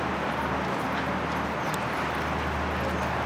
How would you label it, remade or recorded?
recorded